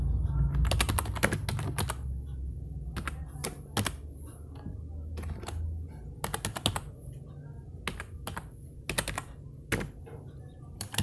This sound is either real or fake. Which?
real